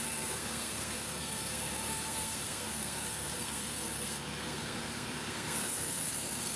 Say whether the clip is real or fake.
fake